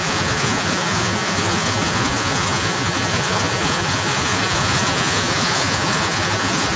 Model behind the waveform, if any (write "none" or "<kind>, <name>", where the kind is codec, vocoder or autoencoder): vocoder, Vocos